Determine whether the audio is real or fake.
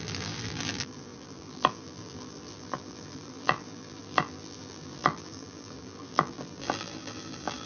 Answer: fake